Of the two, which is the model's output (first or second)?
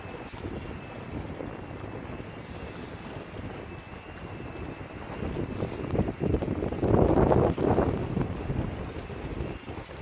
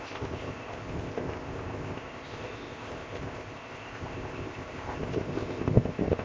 second